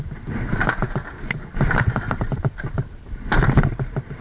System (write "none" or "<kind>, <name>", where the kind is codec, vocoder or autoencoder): none